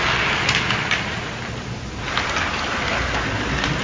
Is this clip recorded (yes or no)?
yes